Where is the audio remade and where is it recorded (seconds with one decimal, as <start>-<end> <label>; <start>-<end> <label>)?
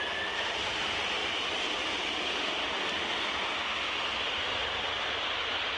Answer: 0.0-5.8 recorded